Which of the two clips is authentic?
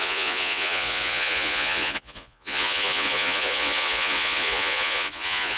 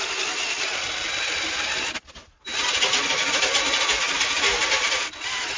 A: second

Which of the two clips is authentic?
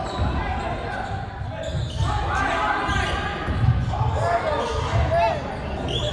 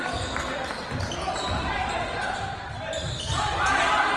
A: first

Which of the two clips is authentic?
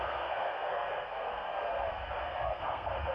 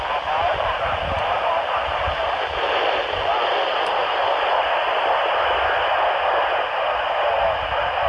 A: second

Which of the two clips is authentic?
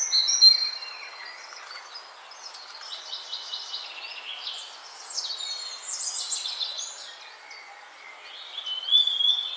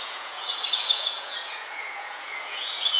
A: first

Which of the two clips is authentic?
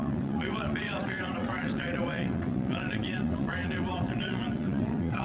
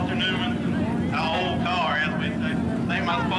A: second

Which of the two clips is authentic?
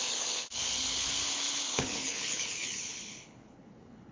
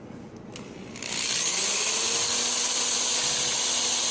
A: second